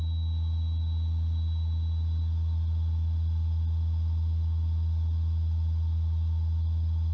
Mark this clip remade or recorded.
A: recorded